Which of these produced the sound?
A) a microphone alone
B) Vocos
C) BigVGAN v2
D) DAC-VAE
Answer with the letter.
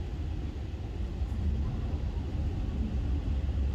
A